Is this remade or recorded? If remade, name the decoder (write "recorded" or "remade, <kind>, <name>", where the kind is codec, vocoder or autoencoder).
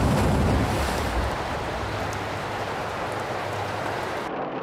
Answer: recorded